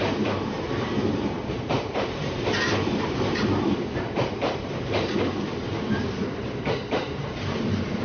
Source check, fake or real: fake